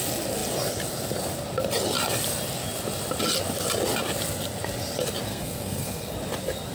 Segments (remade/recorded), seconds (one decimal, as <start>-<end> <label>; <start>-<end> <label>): 0.0-5.3 recorded; 5.3-6.1 remade; 6.1-6.7 recorded